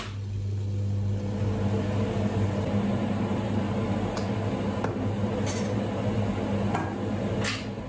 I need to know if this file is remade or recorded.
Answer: recorded